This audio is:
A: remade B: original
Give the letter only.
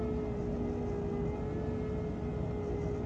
B